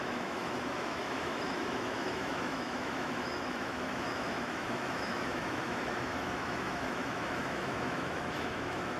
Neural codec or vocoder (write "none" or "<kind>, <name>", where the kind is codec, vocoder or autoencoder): autoencoder, DAC-VAE